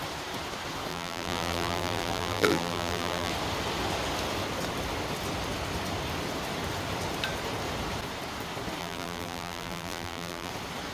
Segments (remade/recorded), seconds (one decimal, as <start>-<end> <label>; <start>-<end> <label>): 0.0-0.9 recorded; 0.9-3.3 remade; 3.3-8.8 recorded; 8.8-10.5 remade; 10.5-10.9 recorded